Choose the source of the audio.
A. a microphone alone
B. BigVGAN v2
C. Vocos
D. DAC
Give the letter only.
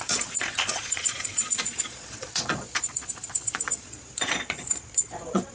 C